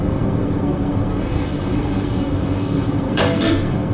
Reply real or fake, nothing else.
fake